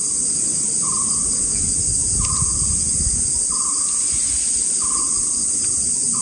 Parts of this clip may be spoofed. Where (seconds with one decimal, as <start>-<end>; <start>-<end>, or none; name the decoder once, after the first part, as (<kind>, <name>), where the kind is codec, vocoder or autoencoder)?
none

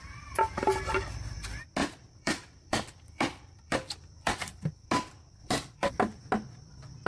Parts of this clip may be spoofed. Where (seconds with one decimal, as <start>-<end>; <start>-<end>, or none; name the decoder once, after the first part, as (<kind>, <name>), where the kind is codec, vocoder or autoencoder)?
1.8-4.9 (vocoder, BigVGAN v2); 5.4-6.0

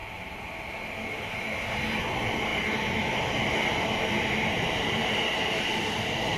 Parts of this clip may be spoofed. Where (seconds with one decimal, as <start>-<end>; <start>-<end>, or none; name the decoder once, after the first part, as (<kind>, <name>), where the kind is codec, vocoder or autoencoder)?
0.0-1.0 (vocoder, BigVGAN v2); 2.5-3.2

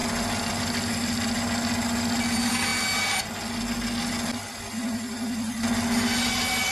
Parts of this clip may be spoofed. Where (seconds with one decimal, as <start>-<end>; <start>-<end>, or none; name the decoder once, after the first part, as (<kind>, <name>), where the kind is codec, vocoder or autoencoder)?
none

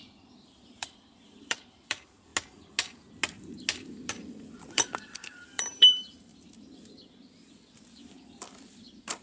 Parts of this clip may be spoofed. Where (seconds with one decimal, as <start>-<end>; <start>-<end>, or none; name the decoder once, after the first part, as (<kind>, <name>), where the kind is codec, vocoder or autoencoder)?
0.0-2.3 (vocoder, BigVGAN v2); 4.1-6.3; 7.5-9.2

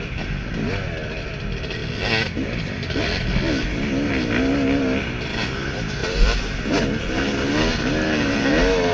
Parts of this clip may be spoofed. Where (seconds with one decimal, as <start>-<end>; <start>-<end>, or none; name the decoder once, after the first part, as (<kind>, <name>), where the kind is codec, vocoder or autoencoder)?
none